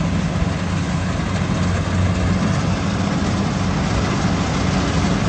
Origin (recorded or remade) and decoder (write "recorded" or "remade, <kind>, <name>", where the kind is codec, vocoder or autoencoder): recorded